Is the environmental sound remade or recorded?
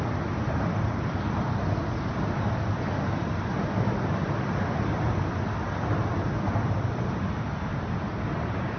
recorded